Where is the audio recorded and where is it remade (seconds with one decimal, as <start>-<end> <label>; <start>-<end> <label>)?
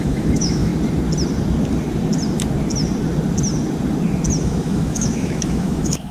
0.0-0.7 remade; 0.7-4.4 recorded; 4.4-6.1 remade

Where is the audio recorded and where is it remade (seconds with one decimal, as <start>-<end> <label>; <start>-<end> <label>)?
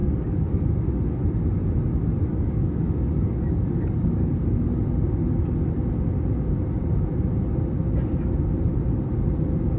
0.0-0.8 remade; 0.8-2.3 recorded; 2.3-4.3 remade; 4.3-9.8 recorded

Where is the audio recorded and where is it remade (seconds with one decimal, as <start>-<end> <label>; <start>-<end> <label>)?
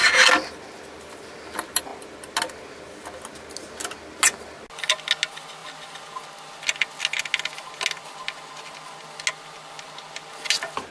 0.0-10.9 recorded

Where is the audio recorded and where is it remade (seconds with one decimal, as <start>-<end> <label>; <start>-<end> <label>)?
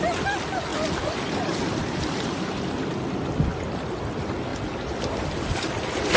0.0-0.7 recorded; 0.7-2.6 remade; 2.6-6.2 recorded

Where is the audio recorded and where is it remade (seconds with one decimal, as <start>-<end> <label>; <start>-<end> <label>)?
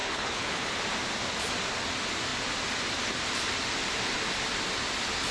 0.0-0.7 remade; 0.7-5.3 recorded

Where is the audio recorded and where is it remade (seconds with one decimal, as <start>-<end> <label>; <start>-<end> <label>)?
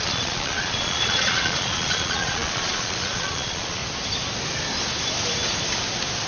0.0-3.8 remade; 3.8-6.3 recorded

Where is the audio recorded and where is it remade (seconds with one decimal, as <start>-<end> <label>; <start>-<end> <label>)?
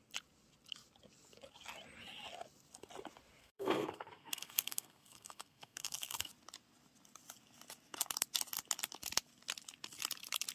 0.0-3.4 recorded; 3.4-6.3 remade; 6.3-10.5 recorded